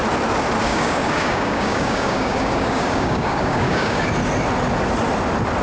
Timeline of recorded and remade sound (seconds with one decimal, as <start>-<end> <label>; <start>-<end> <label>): 0.0-0.6 recorded; 0.6-4.0 remade; 4.0-5.6 recorded